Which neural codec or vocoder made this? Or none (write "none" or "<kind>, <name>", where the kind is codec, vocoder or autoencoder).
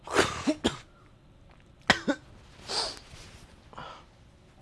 none